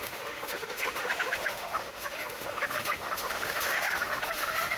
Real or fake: fake